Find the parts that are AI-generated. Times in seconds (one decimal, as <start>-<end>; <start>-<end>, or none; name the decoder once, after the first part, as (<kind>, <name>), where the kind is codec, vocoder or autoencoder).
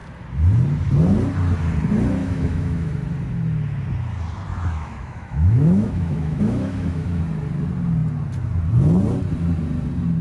2.2-2.9 (autoencoder, DAC-VAE); 4.5-7.2